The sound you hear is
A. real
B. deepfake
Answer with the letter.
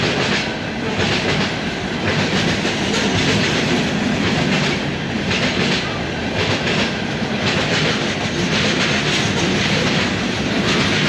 A